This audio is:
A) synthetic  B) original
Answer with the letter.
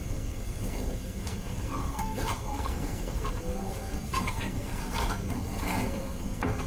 A